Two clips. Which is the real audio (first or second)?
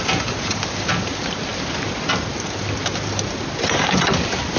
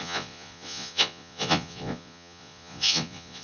first